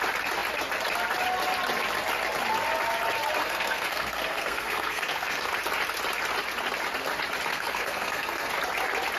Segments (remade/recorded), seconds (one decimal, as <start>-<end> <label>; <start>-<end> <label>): 0.0-3.4 recorded; 3.4-5.5 remade; 5.5-7.5 recorded; 7.5-8.5 remade; 8.5-9.2 recorded